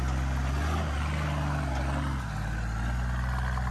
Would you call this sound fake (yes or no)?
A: no